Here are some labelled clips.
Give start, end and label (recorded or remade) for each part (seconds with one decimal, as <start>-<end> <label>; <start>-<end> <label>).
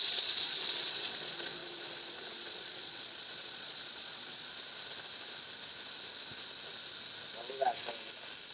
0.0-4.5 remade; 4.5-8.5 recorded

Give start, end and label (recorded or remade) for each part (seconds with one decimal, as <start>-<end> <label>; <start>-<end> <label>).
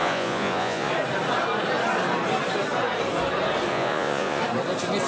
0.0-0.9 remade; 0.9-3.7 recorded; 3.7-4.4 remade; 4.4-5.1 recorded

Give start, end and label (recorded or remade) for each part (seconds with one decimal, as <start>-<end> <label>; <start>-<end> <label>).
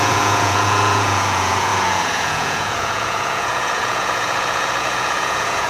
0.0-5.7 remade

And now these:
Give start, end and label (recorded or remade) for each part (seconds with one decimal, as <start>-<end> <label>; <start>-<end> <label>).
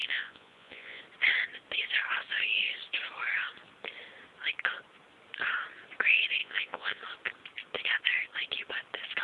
0.0-1.0 remade; 1.0-6.4 recorded; 6.4-7.0 remade; 7.0-9.2 recorded